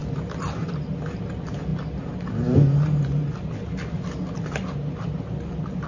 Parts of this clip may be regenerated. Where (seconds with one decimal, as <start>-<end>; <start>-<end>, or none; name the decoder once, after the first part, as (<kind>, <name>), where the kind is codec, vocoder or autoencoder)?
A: none